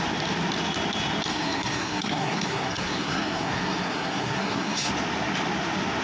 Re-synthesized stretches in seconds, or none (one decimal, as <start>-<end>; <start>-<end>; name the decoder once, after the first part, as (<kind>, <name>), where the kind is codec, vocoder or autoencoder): 1.3-4.9 (codec, SNAC)